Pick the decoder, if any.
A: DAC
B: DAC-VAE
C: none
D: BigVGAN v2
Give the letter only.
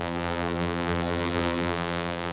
D